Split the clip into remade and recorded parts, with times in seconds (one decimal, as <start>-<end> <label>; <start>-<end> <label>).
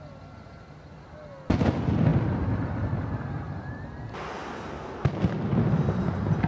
0.0-6.5 recorded